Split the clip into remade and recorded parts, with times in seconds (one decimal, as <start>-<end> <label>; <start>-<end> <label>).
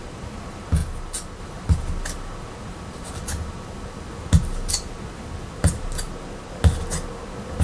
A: 0.0-7.6 recorded